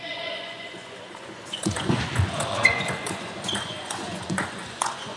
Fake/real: fake